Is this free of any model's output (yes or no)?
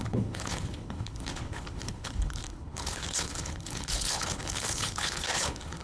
no